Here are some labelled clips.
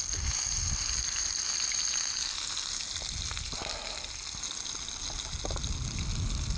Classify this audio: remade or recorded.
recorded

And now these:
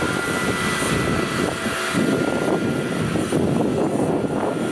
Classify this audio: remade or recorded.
recorded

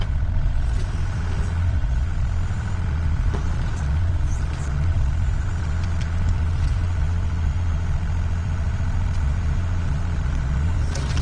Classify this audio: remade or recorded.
remade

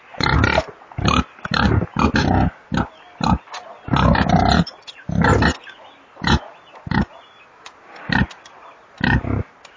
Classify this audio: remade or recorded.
recorded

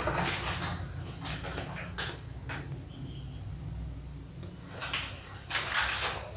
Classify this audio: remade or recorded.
recorded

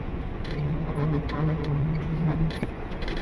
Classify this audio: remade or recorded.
remade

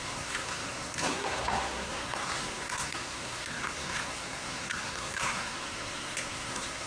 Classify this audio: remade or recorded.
remade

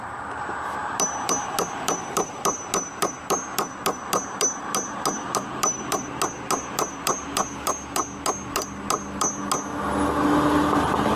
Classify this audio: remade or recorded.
recorded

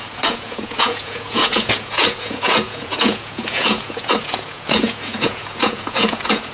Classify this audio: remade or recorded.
remade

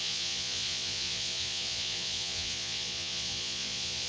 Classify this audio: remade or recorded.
remade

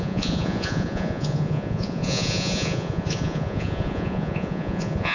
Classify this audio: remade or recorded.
remade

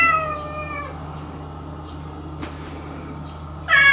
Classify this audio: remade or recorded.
recorded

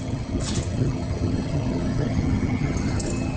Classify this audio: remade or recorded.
remade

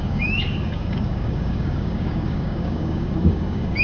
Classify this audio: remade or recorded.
remade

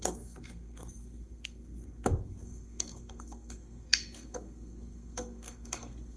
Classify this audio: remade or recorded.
remade